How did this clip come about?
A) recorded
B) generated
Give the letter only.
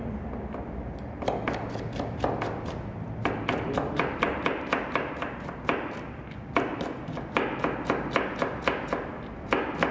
A